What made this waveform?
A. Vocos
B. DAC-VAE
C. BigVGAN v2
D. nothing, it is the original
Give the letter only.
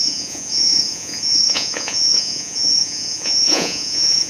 A